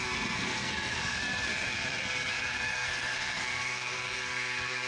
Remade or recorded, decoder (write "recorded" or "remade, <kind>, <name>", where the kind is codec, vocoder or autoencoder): remade, codec, SNAC